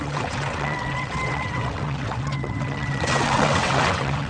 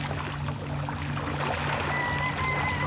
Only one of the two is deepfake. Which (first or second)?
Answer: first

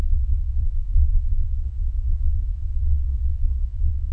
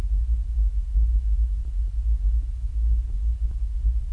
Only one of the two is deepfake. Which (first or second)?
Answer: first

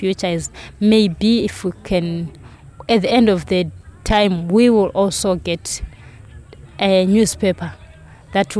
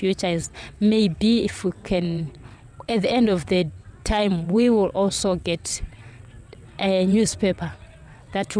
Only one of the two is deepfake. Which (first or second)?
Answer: second